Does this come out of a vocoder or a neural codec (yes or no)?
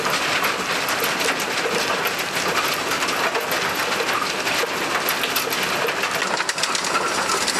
no